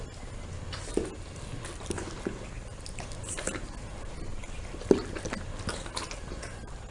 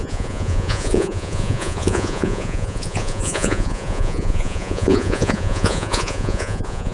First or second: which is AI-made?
second